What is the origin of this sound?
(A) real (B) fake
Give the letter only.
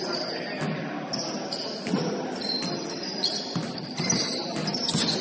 A